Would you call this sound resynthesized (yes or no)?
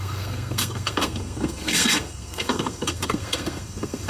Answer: yes